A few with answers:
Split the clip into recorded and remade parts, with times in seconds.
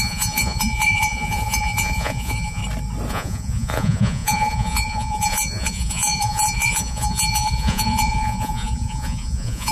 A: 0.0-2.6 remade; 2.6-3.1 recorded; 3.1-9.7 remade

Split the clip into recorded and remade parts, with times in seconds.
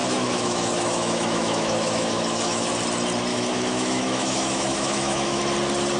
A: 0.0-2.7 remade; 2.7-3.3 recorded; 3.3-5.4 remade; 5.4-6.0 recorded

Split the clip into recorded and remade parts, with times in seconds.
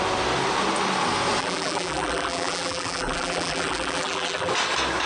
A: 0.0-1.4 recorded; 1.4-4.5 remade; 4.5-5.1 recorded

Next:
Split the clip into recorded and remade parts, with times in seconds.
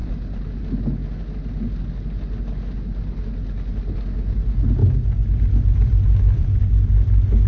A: 0.0-0.6 remade; 0.6-4.8 recorded; 4.8-6.6 remade; 6.6-7.5 recorded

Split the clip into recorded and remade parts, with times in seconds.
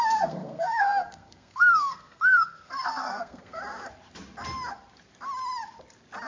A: 0.0-3.6 remade; 3.6-6.3 recorded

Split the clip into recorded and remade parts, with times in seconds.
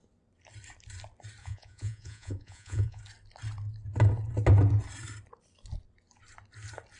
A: 0.0-1.4 recorded; 1.4-3.0 remade; 3.0-7.0 recorded